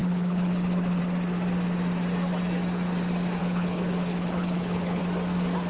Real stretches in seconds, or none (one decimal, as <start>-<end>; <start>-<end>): 1.0-3.4; 5.0-5.7